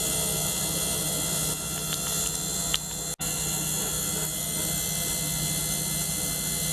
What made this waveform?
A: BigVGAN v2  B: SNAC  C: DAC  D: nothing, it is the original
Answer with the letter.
D